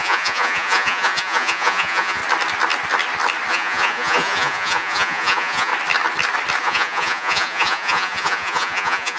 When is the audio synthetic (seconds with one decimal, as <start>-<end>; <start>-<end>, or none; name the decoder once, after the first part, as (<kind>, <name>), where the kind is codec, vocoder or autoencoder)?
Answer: 0.0-2.2 (vocoder, Vocos); 3.5-5.7; 6.6-9.2